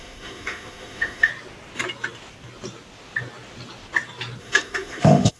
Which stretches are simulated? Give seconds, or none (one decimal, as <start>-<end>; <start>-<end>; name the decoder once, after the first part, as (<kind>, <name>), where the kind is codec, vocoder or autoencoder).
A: 0.0-1.3 (autoencoder, DAC-VAE); 4.4-5.4